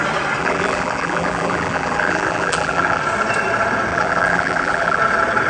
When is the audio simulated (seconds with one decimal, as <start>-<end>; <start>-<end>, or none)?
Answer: 0.4-3.0; 3.9-5.0